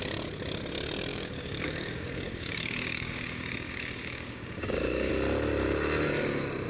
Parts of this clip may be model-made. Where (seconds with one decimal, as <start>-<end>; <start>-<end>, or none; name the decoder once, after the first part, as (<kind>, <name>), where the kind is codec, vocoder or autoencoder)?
1.1-5.1 (codec, DAC)